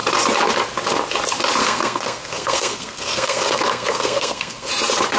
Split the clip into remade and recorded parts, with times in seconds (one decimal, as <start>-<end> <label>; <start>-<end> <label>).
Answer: 0.0-1.6 recorded; 1.6-4.7 remade; 4.7-5.2 recorded